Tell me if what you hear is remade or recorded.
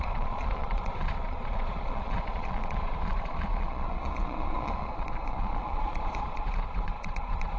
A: remade